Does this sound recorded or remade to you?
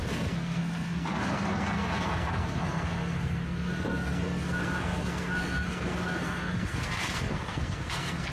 remade